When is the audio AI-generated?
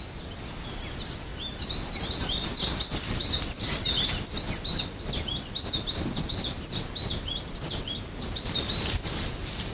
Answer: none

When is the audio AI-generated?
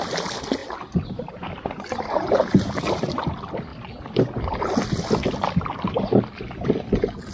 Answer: 0.6-2.8 (vocoder, BigVGAN v2)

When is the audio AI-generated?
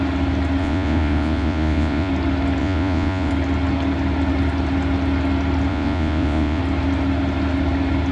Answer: 0.6-2.1 (vocoder, Vocos); 2.6-3.3; 5.7-6.6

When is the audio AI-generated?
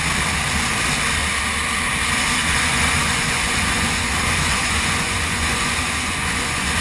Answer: 2.4-6.8 (vocoder, Vocos)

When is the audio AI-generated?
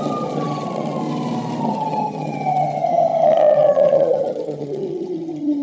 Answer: 0.0-1.0 (vocoder, HiFi-GAN); 1.6-5.6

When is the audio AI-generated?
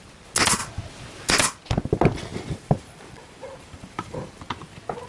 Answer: 2.3-4.4 (vocoder, BigVGAN v2)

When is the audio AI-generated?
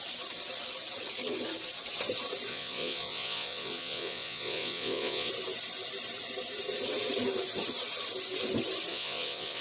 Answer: 2.5-5.3 (vocoder, Vocos); 8.9-9.6